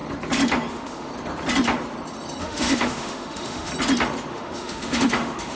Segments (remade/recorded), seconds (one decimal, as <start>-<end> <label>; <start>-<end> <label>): 0.0-0.7 recorded; 0.7-1.1 remade; 1.1-2.4 recorded; 2.4-3.7 remade; 3.7-4.3 recorded; 4.3-5.6 remade